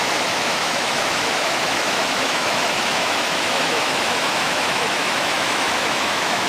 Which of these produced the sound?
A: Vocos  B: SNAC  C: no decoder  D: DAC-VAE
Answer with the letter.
D